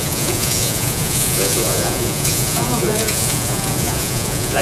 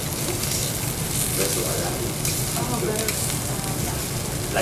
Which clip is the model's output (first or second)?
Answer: first